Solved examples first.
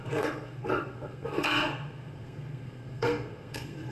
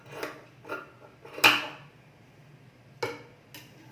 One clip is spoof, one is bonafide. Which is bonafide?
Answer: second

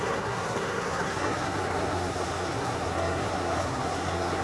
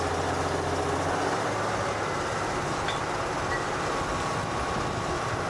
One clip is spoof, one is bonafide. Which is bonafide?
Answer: second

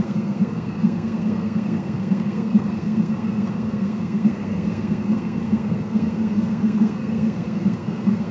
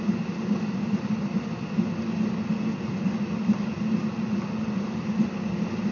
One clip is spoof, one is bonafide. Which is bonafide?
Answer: second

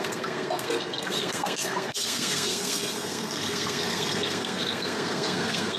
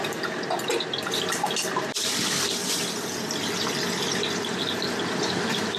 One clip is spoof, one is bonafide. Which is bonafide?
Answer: second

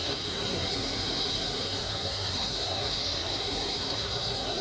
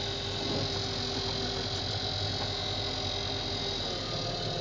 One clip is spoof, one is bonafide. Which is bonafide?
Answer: second